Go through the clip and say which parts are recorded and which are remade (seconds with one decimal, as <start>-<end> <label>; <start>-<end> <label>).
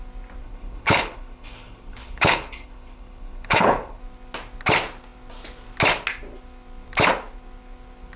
0.0-0.4 recorded; 0.4-4.0 remade; 4.0-8.2 recorded